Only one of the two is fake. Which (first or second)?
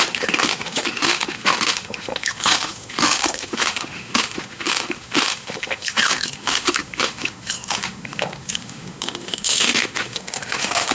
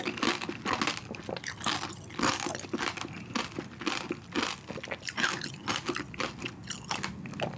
first